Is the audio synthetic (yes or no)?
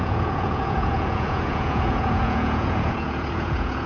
yes